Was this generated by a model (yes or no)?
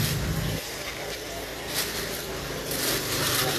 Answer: no